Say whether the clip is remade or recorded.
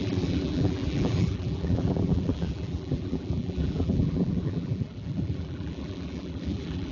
remade